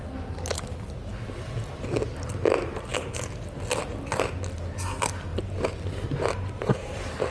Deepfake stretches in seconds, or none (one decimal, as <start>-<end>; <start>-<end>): 5.3-7.3

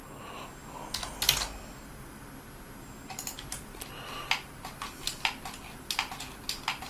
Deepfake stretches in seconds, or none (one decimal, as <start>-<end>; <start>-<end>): none

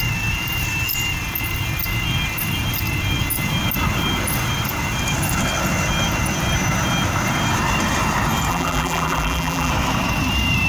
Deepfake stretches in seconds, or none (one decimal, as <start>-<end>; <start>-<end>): 8.5-9.7

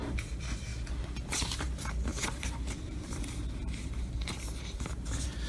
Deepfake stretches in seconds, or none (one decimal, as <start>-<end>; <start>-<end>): 0.0-0.7; 1.3-5.5

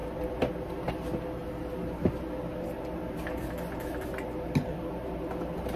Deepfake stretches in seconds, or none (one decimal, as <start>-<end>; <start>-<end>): none

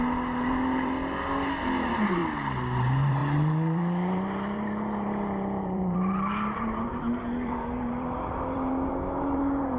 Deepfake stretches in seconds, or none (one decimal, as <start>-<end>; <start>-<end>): 0.0-2.2; 2.8-9.8